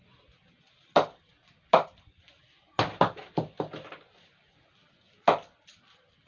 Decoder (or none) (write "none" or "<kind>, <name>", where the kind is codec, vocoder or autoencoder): none